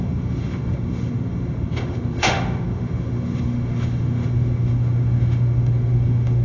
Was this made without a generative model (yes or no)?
no